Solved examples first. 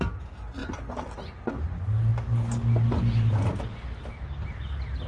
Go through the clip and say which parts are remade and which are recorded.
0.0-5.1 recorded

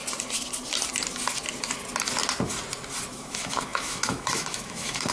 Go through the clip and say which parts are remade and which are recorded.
0.0-3.1 recorded; 3.1-5.1 remade

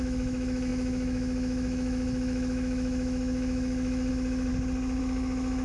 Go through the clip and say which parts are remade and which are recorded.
0.0-4.5 remade; 4.5-5.0 recorded; 5.0-5.6 remade

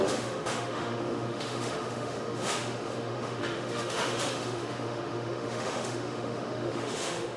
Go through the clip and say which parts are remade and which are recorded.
0.0-7.4 remade

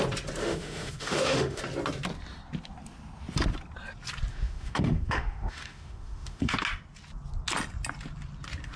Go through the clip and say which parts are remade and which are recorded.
0.0-0.4 recorded; 0.4-1.6 remade; 1.6-4.3 recorded; 4.3-6.5 remade; 6.5-8.8 recorded

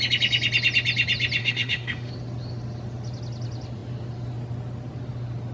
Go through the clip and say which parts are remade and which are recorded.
0.0-1.4 recorded; 1.4-2.1 remade; 2.1-5.5 recorded

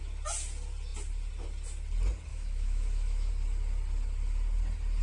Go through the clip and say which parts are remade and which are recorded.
0.0-2.3 recorded; 2.3-3.3 remade; 3.3-5.0 recorded

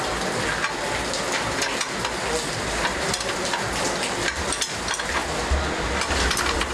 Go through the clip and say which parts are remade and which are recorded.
0.0-6.7 recorded